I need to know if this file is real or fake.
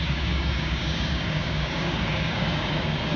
fake